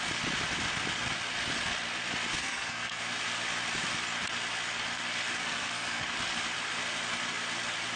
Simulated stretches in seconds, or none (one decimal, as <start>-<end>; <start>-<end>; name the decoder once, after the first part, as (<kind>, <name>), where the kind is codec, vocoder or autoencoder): 2.4-3.0 (codec, SNAC); 5.4-6.0